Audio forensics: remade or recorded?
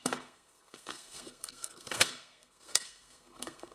remade